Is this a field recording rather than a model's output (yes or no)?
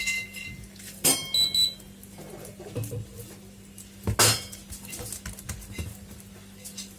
yes